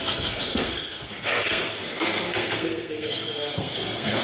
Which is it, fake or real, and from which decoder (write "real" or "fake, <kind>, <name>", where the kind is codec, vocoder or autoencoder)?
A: fake, codec, SNAC